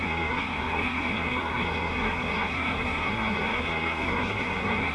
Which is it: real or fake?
fake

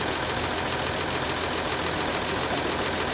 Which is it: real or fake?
real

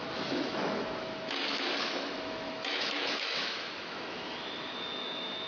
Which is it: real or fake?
fake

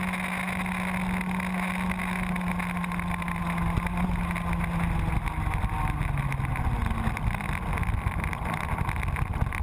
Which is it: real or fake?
real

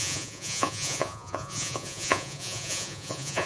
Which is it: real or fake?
fake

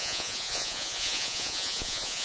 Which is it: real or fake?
fake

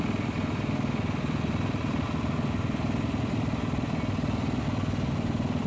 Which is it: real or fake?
real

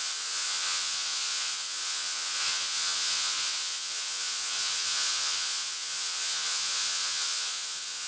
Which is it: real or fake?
fake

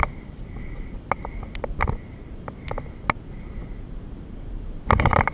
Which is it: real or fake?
fake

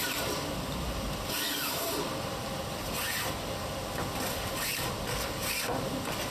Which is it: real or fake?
real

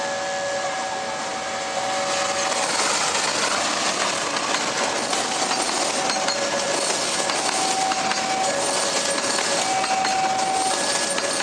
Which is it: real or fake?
real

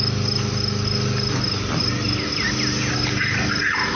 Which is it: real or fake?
real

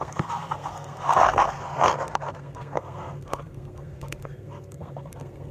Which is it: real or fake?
fake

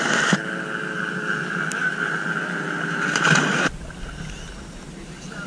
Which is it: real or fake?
real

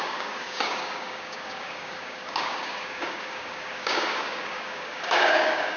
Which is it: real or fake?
fake